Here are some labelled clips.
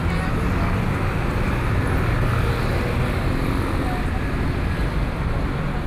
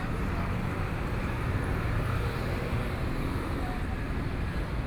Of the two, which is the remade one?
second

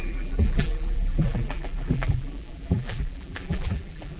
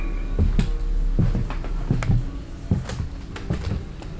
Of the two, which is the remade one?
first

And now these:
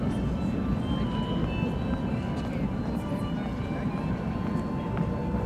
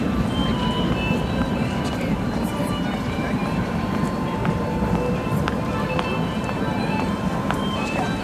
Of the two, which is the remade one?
second